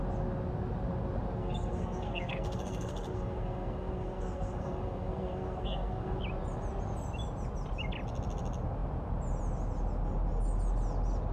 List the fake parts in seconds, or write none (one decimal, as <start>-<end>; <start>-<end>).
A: 1.4-6.2